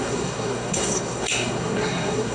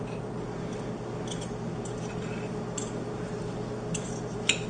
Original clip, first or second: second